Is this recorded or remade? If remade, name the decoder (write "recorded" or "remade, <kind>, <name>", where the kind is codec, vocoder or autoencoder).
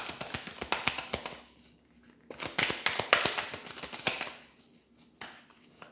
recorded